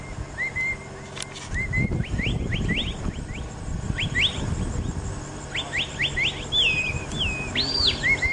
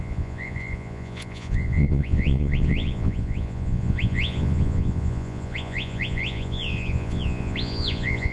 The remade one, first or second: second